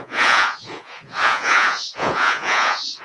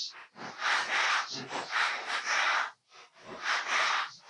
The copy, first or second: first